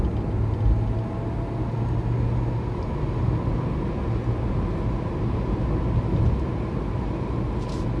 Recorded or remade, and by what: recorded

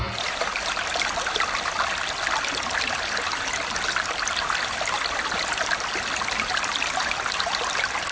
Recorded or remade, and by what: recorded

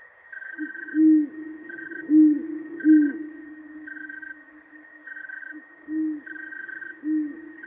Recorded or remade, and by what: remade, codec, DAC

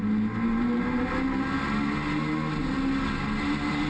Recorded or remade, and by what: recorded